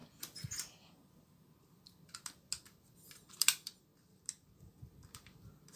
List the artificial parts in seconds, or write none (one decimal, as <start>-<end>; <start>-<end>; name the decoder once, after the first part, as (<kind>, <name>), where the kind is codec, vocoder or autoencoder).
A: none